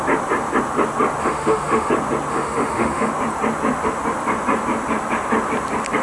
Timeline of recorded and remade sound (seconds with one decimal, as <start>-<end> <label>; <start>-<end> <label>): 0.0-1.2 recorded; 1.2-1.9 remade; 1.9-2.3 recorded; 2.3-3.1 remade; 3.1-6.0 recorded

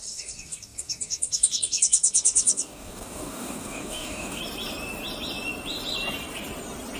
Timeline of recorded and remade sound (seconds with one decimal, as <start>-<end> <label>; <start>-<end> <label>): 0.0-4.4 remade; 4.4-7.0 recorded

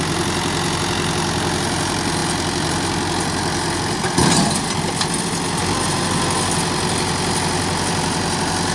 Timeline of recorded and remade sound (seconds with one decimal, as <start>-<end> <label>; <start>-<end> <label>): 0.0-8.7 recorded

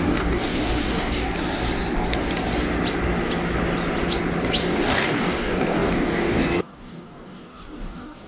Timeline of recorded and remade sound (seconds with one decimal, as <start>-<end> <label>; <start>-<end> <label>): 0.0-1.3 remade; 1.3-4.6 recorded; 4.6-8.3 remade

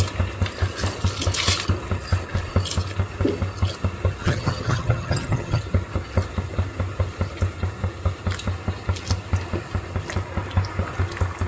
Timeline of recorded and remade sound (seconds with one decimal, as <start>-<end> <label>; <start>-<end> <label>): 0.0-4.2 recorded; 4.2-5.6 remade; 5.6-11.5 recorded